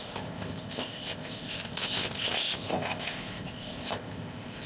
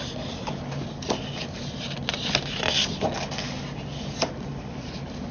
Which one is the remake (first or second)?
first